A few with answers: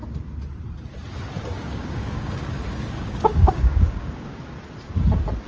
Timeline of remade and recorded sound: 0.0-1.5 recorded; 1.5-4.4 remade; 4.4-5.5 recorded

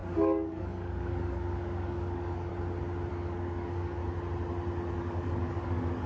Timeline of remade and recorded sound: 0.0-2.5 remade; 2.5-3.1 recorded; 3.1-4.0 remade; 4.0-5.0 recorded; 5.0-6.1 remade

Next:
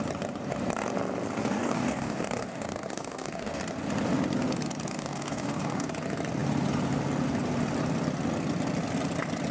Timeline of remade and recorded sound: 0.0-1.4 recorded; 1.4-3.6 remade; 3.6-4.9 recorded; 4.9-5.9 remade; 5.9-9.5 recorded